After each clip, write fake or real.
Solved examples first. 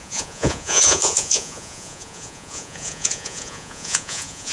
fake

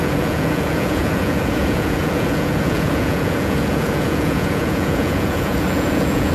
fake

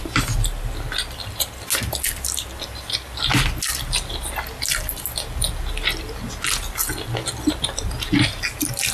real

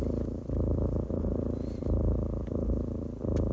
real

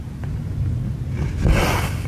real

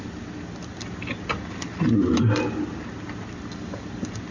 real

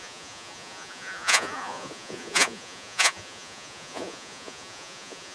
fake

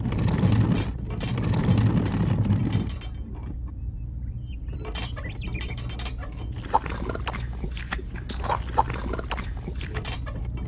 real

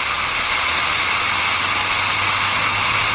real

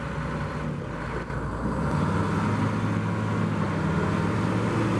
real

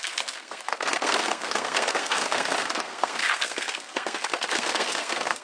fake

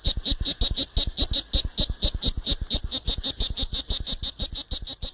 real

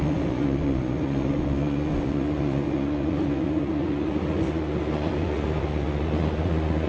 fake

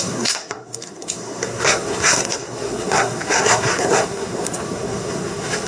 fake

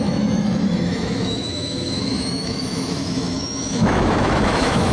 fake